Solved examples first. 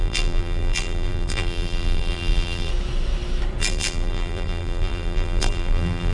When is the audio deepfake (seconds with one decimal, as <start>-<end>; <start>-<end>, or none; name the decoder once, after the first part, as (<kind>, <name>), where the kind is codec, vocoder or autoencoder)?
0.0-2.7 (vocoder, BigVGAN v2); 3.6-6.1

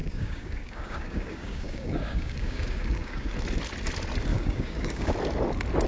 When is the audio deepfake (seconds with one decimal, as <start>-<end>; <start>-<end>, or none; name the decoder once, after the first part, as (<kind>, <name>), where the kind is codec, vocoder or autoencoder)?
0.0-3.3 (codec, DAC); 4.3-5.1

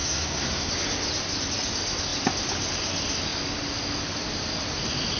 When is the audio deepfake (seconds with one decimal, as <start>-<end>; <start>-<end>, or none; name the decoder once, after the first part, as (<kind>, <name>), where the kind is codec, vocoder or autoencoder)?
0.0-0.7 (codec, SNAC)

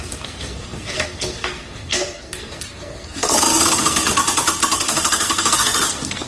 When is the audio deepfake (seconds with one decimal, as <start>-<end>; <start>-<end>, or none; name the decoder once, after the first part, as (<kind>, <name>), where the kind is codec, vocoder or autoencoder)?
0.0-4.2 (codec, SNAC); 4.7-6.3

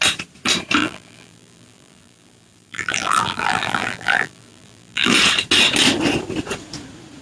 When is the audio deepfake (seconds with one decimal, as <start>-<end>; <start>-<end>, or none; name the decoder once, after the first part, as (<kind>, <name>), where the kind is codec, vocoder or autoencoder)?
0.8-5.1 (vocoder, BigVGAN v2)

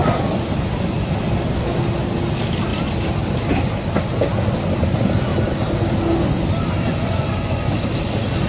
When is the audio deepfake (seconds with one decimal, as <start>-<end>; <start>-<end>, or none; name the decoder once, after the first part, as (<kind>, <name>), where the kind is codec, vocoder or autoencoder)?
6.9-7.9 (vocoder, Vocos)

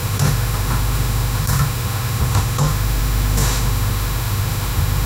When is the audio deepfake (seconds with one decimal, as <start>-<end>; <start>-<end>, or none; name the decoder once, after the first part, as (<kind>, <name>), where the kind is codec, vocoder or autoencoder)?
0.0-5.1 (autoencoder, DAC-VAE)

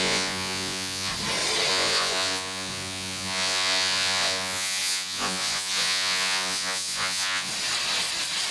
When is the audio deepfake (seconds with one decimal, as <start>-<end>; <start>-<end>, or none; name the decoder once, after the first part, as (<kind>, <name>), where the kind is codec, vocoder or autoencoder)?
0.0-1.1 (vocoder, Vocos); 1.7-7.5